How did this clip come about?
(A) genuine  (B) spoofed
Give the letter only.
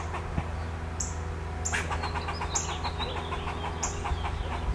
A